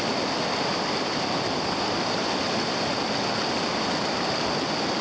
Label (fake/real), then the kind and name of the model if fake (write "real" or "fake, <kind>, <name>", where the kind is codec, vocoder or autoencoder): real